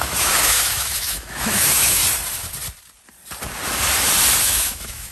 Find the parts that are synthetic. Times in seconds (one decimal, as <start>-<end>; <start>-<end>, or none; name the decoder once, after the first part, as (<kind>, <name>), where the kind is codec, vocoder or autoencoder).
0.0-2.0 (autoencoder, DAC-VAE); 4.4-5.1